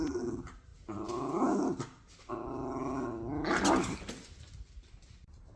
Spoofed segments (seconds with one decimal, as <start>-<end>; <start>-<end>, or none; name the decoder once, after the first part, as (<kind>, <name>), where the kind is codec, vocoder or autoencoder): none